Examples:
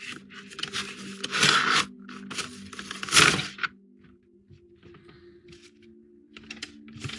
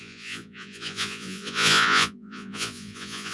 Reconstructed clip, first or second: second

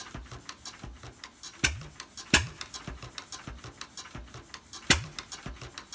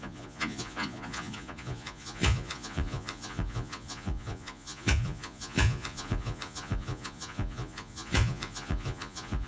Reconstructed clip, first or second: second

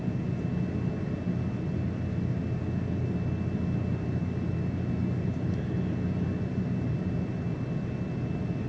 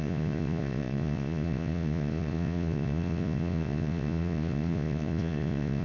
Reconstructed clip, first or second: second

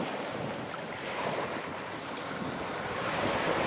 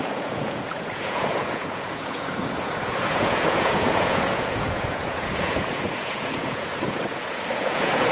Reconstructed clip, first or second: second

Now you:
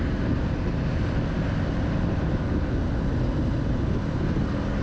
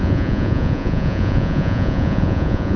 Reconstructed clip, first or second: second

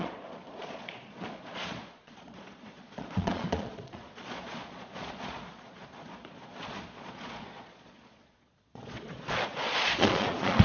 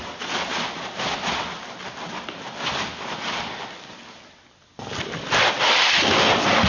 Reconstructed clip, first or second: first